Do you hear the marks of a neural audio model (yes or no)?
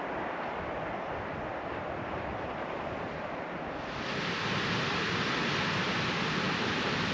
no